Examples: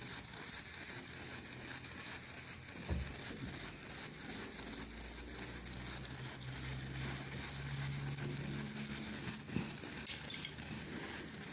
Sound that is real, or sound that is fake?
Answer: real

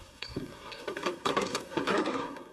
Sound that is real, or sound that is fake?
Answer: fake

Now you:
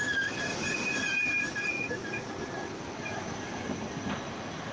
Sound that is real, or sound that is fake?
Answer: real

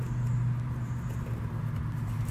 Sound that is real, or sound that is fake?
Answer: real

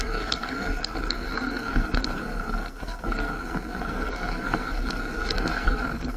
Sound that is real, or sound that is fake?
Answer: fake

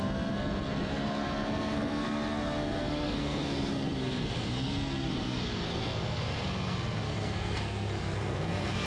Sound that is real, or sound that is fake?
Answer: fake